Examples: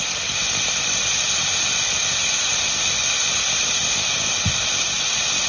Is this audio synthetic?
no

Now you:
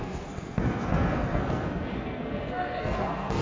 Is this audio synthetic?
yes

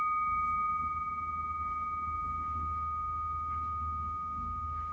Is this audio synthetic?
no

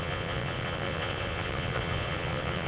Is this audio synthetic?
yes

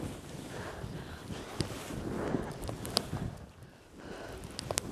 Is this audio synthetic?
no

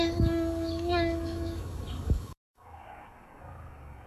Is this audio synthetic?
yes